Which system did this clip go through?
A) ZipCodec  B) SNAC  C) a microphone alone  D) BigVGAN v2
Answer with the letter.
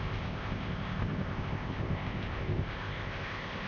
A